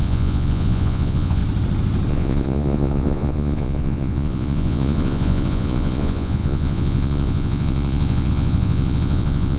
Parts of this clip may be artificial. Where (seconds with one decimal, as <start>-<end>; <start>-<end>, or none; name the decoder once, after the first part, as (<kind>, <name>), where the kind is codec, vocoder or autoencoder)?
0.0-1.4 (vocoder, Vocos); 2.1-9.6